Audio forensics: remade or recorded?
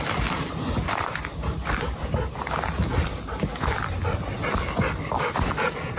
recorded